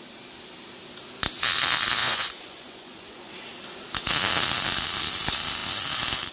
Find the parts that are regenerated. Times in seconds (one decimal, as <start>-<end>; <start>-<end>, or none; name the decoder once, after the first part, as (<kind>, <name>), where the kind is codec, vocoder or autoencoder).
2.0-3.3 (vocoder, Vocos)

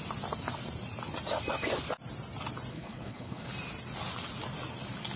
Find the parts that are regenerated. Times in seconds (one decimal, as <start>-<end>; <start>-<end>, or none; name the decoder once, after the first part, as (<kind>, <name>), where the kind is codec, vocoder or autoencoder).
2.7-3.5 (codec, HILCodec)

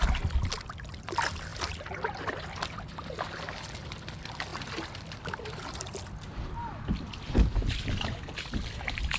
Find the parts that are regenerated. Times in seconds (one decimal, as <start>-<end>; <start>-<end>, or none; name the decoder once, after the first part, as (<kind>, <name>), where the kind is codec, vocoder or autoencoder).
none